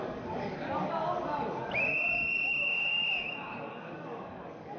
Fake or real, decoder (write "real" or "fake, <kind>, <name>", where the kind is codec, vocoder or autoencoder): fake, codec, DAC